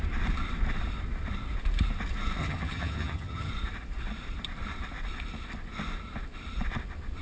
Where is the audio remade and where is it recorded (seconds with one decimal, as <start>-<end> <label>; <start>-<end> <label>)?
0.0-2.4 recorded; 2.4-3.5 remade; 3.5-7.2 recorded